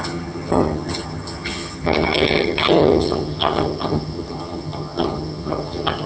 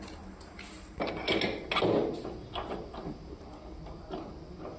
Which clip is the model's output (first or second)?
first